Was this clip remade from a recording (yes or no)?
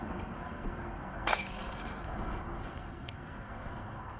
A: yes